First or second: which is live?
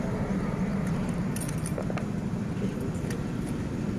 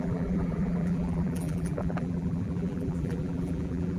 first